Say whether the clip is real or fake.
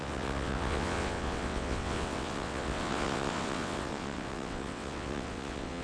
fake